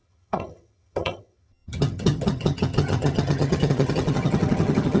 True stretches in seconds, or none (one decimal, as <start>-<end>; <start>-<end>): none